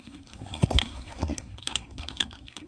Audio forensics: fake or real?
fake